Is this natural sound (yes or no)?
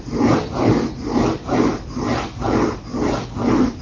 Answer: yes